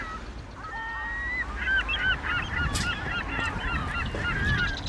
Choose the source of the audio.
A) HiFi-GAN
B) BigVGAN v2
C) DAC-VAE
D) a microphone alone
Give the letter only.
D